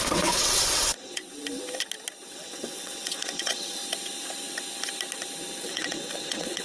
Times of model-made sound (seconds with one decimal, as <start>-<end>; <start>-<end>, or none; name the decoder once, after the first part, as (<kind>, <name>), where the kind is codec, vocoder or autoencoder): 0.0-1.2 (vocoder, WaveNeXt); 2.3-3.8; 5.6-6.6